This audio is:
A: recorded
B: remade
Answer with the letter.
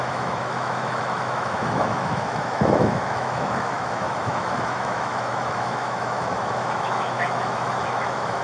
B